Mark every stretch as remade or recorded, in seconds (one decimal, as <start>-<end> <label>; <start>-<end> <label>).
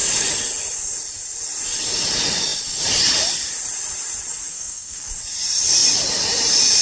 0.0-4.5 recorded; 4.5-5.1 remade; 5.1-6.8 recorded